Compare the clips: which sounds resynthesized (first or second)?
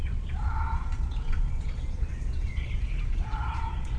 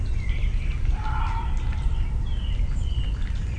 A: first